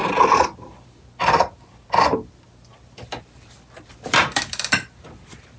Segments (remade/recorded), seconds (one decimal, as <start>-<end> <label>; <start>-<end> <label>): 0.0-2.0 remade; 2.0-2.7 recorded; 2.7-5.6 remade